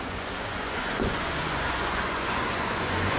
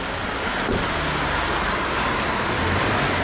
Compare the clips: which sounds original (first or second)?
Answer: second